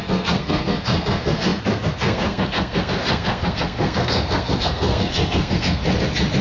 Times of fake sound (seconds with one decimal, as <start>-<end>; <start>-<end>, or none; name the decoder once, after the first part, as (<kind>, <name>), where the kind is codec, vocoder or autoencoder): 0.0-5.8 (codec, SNAC)